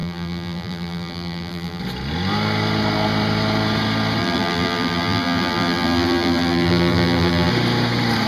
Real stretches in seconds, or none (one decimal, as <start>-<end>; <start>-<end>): 1.8-4.2; 7.5-8.3